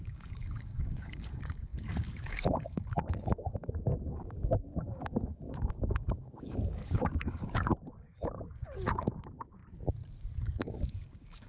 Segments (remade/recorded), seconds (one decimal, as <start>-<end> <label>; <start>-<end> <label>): 0.0-9.6 remade; 9.6-10.4 recorded; 10.4-11.5 remade